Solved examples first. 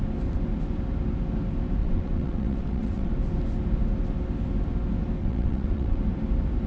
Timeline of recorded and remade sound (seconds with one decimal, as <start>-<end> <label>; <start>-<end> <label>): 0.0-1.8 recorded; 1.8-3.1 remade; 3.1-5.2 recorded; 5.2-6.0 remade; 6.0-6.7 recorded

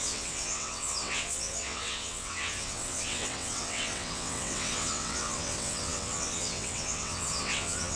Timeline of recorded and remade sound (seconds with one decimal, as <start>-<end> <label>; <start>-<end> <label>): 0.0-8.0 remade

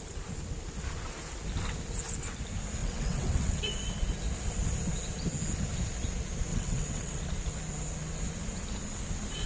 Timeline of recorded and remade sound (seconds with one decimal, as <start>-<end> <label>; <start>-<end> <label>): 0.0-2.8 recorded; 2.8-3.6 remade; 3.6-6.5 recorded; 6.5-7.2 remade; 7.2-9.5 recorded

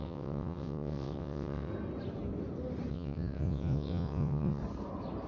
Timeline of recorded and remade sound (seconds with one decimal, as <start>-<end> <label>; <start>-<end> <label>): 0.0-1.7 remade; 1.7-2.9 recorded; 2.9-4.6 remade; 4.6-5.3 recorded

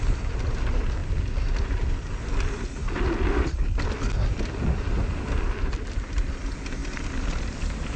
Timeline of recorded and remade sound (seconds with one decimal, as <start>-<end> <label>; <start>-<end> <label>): 0.0-8.0 recorded